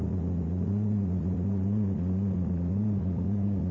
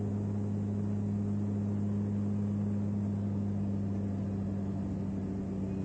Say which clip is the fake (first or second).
first